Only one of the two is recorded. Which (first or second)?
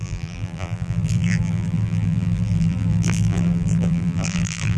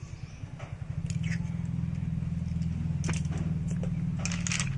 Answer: second